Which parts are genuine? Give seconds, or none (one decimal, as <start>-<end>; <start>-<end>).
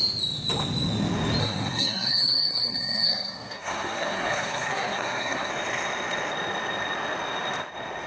0.0-1.4; 5.5-8.1